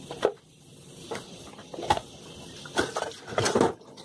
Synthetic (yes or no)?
no